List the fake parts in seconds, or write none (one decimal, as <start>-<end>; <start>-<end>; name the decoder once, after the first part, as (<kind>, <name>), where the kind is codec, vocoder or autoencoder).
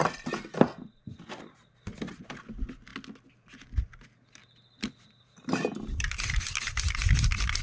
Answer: 2.9-3.9 (vocoder, BigVGAN v2); 4.4-7.6